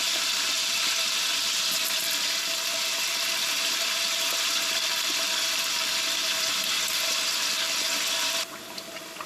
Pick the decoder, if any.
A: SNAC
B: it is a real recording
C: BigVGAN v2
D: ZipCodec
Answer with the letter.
C